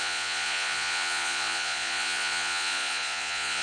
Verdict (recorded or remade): remade